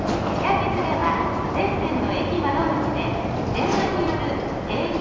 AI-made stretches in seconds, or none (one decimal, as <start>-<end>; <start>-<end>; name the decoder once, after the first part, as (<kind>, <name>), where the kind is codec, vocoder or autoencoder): none